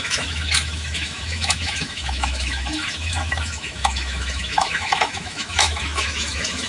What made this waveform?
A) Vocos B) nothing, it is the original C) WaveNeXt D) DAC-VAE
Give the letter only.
D